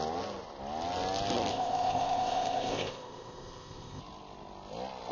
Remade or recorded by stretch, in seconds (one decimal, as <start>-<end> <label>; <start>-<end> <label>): 0.0-1.5 recorded; 1.5-4.0 remade; 4.0-5.1 recorded